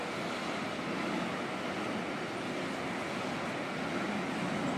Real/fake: real